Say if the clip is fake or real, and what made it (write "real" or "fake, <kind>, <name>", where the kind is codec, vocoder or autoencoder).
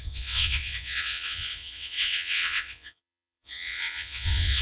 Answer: fake, vocoder, WaveNeXt